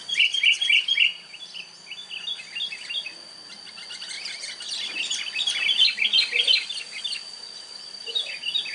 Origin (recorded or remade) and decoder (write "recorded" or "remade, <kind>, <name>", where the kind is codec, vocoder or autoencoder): recorded